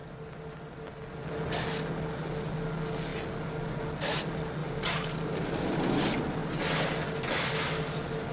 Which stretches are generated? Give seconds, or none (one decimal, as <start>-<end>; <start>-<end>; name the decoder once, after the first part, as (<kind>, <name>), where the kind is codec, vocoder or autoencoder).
4.6-6.0 (vocoder, BigVGAN v2)

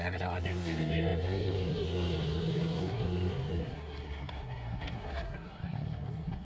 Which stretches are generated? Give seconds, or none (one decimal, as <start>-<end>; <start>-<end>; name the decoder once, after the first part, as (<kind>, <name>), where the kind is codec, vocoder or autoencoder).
0.0-6.4 (codec, SNAC)

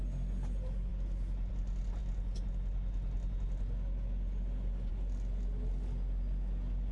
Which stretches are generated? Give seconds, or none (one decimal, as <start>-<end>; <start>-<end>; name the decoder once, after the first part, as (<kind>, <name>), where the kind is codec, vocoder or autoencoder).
none

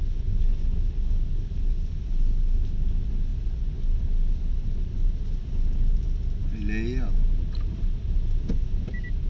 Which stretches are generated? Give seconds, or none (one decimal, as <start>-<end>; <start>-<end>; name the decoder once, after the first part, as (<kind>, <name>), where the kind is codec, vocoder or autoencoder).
none